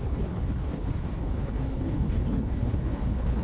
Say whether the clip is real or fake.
fake